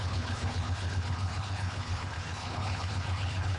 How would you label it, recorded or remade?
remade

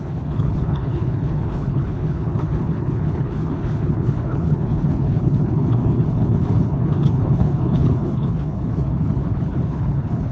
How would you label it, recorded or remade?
remade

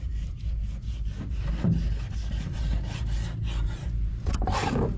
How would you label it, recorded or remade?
recorded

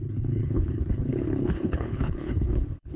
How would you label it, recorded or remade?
remade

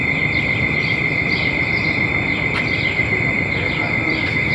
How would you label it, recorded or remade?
recorded